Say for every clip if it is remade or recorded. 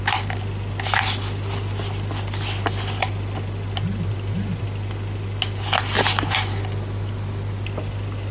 recorded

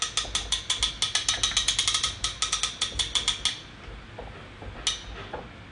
recorded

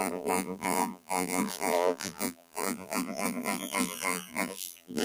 remade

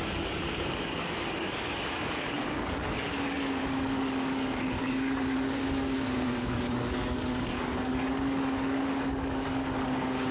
remade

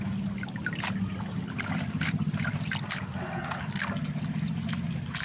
recorded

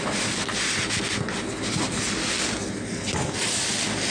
recorded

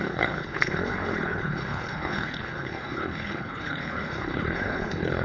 remade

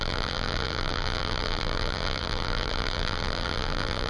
remade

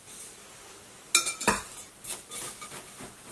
recorded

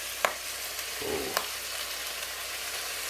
recorded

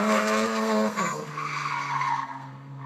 remade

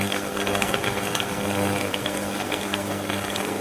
remade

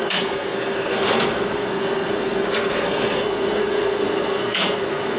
remade